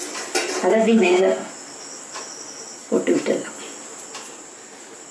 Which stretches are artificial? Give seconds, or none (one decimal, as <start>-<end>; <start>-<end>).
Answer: 0.7-1.5